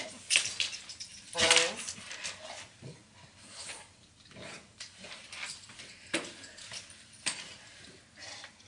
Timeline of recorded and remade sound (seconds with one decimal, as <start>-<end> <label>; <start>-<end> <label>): 0.0-8.7 recorded